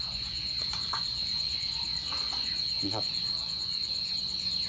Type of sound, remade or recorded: remade